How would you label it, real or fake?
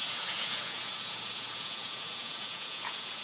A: fake